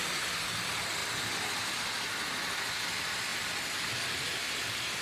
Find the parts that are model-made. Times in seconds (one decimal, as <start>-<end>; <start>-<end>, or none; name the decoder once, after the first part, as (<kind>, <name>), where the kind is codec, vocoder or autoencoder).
none

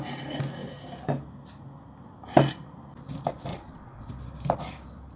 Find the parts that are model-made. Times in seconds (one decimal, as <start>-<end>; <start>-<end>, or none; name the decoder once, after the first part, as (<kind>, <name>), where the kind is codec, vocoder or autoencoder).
3.5-4.1 (vocoder, Vocos)